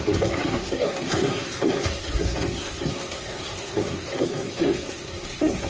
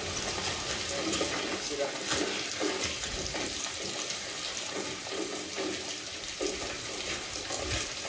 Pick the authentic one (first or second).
second